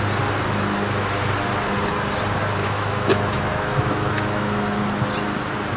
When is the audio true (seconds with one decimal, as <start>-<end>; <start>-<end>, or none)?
0.0-2.6; 4.8-5.8